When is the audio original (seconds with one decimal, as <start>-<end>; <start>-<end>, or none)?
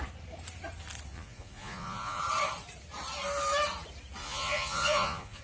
0.0-1.1; 2.2-4.2